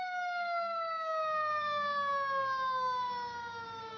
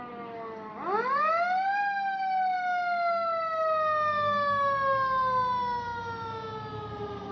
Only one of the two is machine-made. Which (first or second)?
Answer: first